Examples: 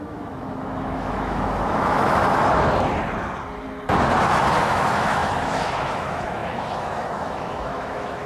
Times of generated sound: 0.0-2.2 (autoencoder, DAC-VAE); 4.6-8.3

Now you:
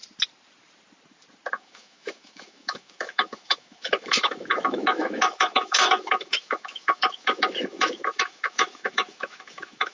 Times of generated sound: 1.5-9.9 (autoencoder, DAC-VAE)